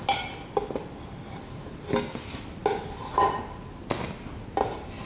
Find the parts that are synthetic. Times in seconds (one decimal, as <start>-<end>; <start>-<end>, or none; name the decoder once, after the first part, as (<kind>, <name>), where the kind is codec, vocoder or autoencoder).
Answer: none